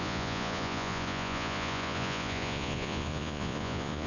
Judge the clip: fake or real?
fake